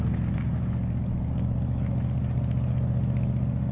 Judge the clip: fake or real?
real